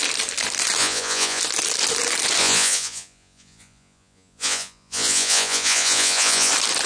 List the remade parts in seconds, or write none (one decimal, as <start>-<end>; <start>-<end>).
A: 0.8-1.4; 2.4-6.5